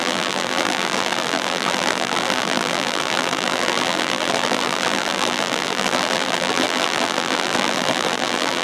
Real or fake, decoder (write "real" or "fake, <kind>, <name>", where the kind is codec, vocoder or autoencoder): fake, vocoder, BigVGAN v2